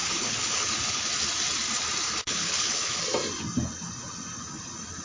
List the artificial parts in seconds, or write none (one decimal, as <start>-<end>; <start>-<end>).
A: 0.0-1.0; 2.2-3.0